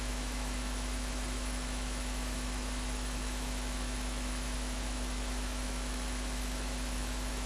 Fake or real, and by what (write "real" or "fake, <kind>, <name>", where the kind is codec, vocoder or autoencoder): fake, autoencoder, DAC-VAE